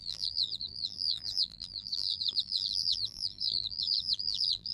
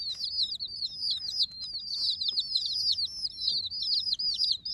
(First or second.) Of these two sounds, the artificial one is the first